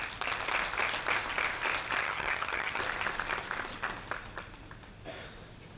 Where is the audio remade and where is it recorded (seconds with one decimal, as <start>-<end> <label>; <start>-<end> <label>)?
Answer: 0.0-2.0 recorded; 2.0-2.8 remade; 2.8-5.8 recorded